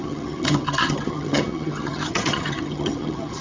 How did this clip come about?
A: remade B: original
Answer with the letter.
A